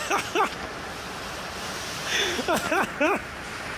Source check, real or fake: real